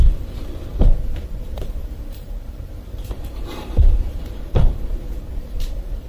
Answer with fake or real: fake